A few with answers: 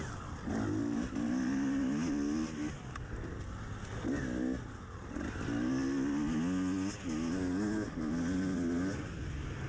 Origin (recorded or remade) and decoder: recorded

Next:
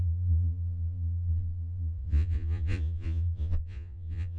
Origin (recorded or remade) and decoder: remade, vocoder, Vocos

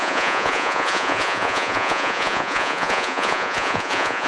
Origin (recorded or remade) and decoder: remade, vocoder, Vocos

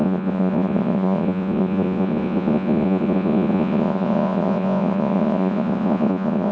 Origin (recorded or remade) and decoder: remade, vocoder, Vocos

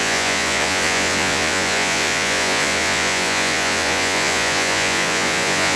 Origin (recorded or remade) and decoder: remade, vocoder, Vocos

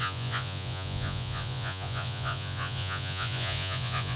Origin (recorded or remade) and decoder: remade, vocoder, Vocos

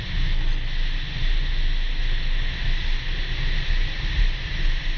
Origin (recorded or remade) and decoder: recorded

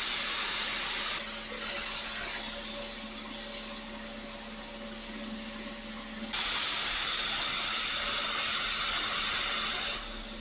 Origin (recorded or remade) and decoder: recorded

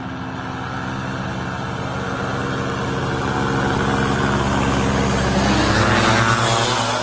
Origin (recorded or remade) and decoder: recorded